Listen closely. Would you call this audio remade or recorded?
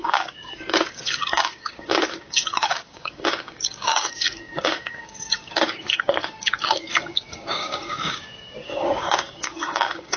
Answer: remade